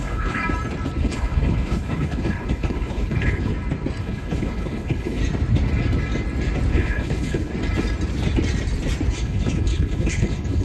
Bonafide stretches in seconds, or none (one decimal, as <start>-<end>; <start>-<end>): 0.4-1.0; 3.5-4.0; 5.2-6.7; 7.5-9.1

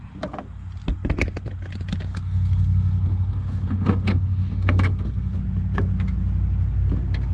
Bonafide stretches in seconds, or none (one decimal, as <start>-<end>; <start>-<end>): 0.0-2.1; 5.4-7.3

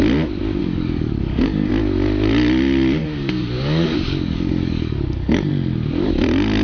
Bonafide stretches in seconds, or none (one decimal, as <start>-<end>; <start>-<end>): 0.0-0.6; 1.7-3.0; 5.5-6.6